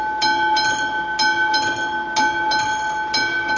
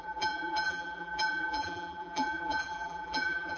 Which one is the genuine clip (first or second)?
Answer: first